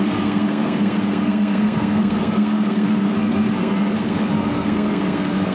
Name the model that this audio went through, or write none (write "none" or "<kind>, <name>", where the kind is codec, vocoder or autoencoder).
codec, SNAC